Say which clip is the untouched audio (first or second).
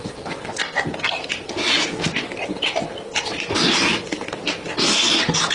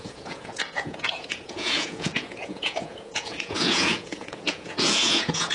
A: first